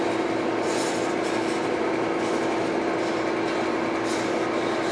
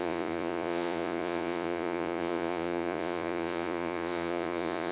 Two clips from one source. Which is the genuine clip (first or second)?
first